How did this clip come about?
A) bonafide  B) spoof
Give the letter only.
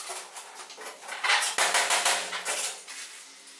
A